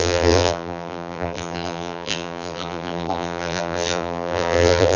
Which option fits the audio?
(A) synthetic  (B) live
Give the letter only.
A